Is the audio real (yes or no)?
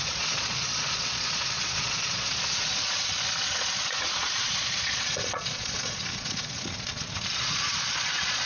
no